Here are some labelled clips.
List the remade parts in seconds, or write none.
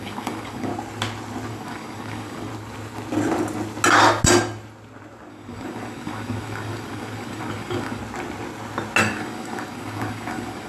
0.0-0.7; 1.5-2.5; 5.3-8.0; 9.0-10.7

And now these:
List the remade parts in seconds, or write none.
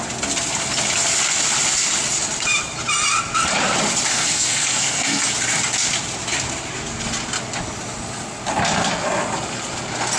4.1-5.2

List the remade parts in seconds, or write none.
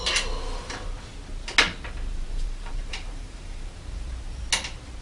2.1-4.5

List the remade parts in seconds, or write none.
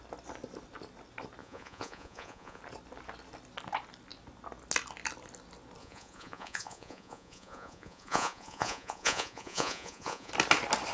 1.4-2.6; 5.8-10.3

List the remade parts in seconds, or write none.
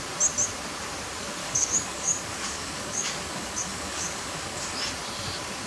1.4-4.8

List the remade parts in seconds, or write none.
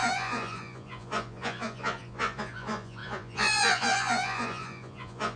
0.0-5.4